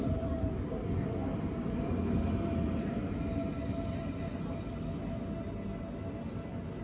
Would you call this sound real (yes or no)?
yes